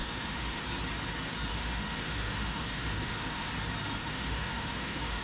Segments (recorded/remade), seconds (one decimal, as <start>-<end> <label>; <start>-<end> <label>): 0.0-0.6 remade; 0.6-1.5 recorded; 1.5-3.5 remade; 3.5-4.0 recorded; 4.0-5.2 remade